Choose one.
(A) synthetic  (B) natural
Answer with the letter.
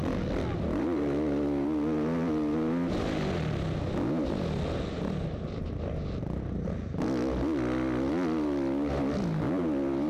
B